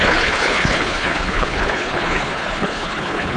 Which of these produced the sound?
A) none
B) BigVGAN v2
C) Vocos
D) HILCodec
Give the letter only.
D